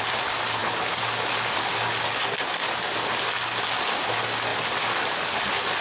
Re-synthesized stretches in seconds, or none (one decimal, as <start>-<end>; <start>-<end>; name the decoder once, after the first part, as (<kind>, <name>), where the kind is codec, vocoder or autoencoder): none